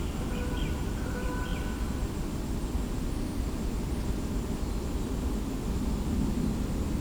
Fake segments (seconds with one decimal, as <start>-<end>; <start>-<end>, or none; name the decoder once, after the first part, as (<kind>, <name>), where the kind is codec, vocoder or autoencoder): none